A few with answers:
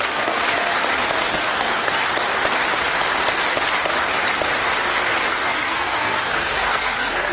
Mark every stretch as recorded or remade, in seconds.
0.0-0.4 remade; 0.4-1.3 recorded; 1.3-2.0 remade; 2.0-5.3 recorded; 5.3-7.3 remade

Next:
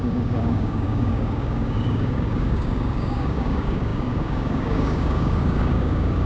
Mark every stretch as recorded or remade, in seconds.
0.0-6.3 remade

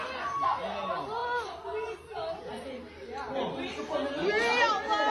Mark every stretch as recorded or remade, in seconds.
0.0-5.1 recorded

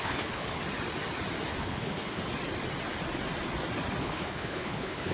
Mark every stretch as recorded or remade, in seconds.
0.0-0.6 remade; 0.6-1.6 recorded; 1.6-2.2 remade; 2.2-4.0 recorded; 4.0-5.1 remade

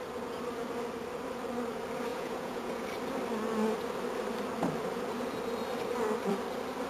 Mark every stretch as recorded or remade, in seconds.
0.0-2.1 recorded; 2.1-2.9 remade; 2.9-6.9 recorded

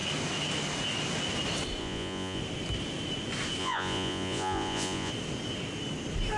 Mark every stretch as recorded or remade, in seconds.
0.0-1.8 recorded; 1.8-2.4 remade; 2.4-3.6 recorded; 3.6-5.1 remade; 5.1-6.4 recorded

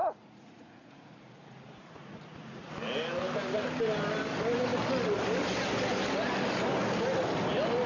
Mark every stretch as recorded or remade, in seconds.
0.0-2.7 remade; 2.7-7.9 recorded

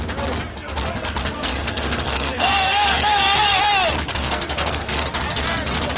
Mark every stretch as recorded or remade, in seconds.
0.0-0.5 recorded; 0.5-3.6 remade; 3.6-4.1 recorded; 4.1-5.1 remade; 5.1-6.0 recorded